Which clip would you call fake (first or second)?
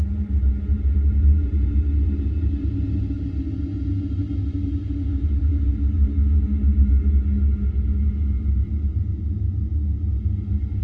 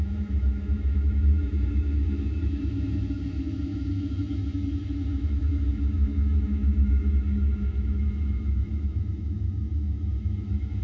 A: second